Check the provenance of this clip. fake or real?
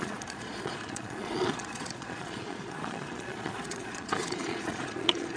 fake